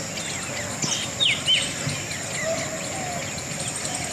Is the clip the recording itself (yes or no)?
yes